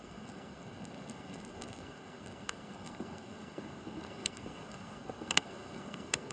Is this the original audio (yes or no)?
no